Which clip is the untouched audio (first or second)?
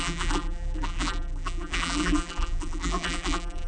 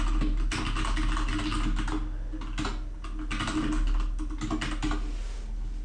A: second